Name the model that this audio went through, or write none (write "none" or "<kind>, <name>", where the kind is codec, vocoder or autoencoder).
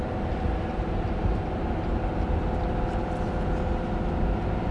none